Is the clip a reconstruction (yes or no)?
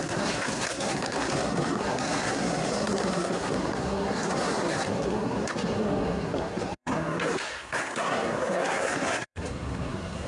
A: yes